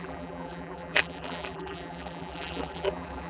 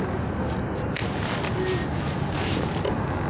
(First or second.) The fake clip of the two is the first